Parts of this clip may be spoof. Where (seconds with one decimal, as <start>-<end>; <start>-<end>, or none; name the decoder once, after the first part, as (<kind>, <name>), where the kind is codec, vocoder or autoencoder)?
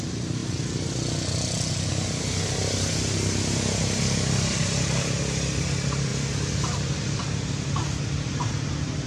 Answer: none